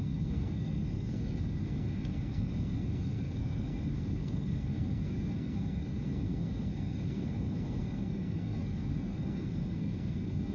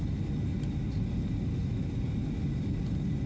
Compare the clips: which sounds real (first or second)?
second